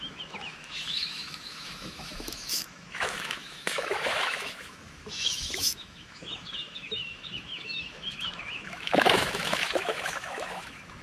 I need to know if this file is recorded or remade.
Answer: remade